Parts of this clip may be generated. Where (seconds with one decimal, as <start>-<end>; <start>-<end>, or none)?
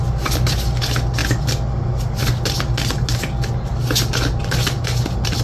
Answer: none